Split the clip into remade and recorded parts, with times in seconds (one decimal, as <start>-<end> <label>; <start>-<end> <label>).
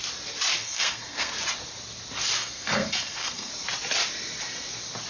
0.0-0.6 recorded; 0.6-1.3 remade; 1.3-2.4 recorded; 2.4-3.5 remade; 3.5-5.1 recorded